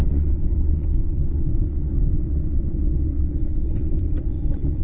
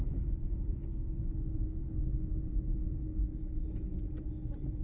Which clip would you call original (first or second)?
second